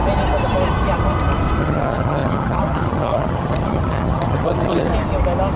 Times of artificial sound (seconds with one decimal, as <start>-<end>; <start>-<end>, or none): 1.6-4.9